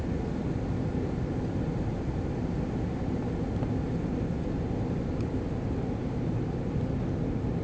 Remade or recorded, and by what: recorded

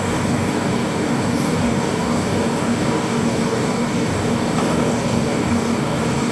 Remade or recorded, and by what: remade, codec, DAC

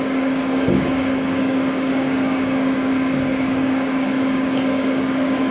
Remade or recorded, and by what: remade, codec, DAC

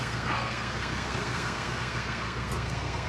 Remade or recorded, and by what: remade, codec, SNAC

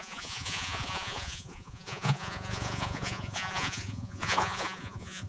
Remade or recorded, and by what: remade, vocoder, Vocos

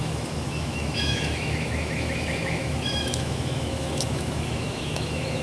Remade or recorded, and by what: remade, autoencoder, DAC-VAE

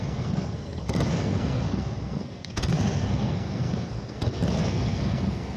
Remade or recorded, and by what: remade, codec, SNAC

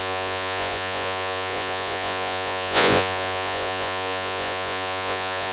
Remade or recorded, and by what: remade, vocoder, Vocos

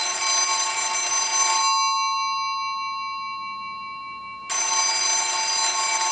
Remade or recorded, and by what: recorded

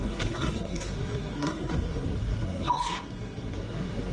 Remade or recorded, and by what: remade, codec, SNAC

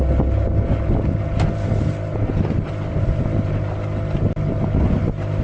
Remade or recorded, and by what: recorded